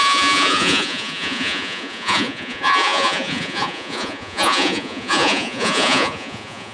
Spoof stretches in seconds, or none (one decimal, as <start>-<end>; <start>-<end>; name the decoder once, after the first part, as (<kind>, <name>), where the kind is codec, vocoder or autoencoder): 0.0-6.7 (vocoder, Vocos)